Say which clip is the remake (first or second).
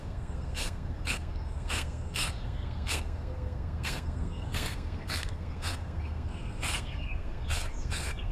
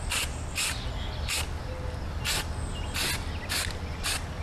first